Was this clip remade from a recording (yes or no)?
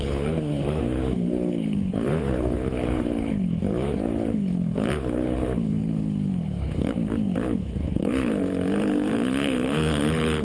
yes